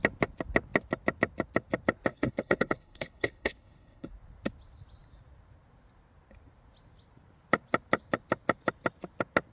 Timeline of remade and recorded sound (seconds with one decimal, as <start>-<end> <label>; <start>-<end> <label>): 0.0-2.1 recorded; 2.1-4.1 remade; 4.1-9.5 recorded